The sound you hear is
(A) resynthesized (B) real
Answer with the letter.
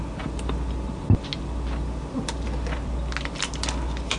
B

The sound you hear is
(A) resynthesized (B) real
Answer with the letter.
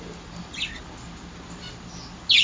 B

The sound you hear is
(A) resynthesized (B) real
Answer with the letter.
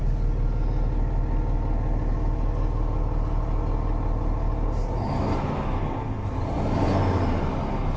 B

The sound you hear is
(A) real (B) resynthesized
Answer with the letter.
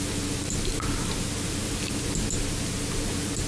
A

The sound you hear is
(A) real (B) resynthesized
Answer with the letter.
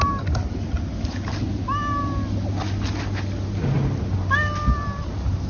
A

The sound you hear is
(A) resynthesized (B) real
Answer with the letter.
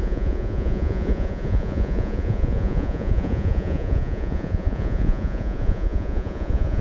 A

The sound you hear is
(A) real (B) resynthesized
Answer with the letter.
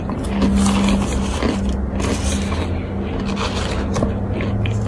A